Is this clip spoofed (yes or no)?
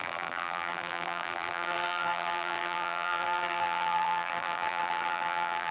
yes